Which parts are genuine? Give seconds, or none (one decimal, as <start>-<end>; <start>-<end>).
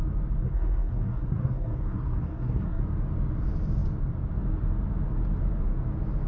0.0-0.4; 2.8-6.3